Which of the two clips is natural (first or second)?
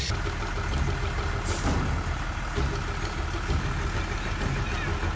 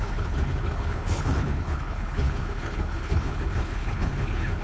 first